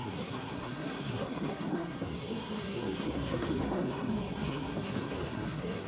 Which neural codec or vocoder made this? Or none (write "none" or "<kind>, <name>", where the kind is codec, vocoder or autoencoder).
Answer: codec, SNAC